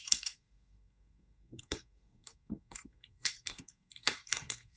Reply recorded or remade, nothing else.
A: remade